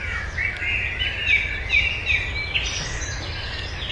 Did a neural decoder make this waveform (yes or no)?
no